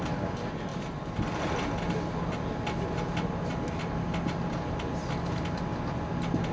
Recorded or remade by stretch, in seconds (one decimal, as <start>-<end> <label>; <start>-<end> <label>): 0.0-6.5 recorded